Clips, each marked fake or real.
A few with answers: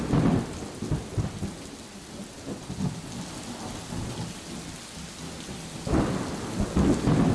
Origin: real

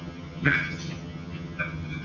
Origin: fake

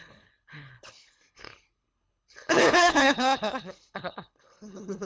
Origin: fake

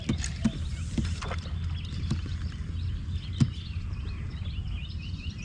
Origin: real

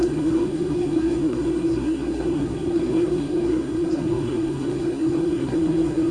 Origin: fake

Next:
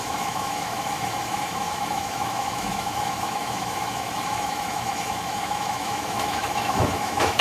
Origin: fake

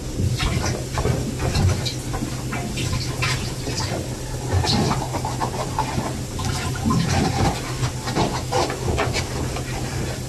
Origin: real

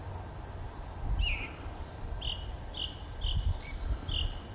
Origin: real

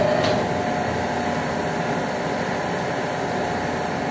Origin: real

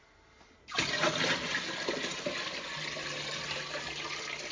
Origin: real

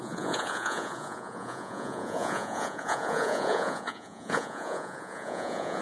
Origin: fake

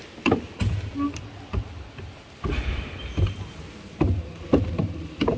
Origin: real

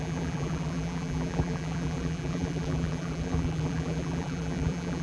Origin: fake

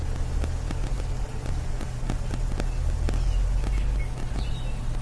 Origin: real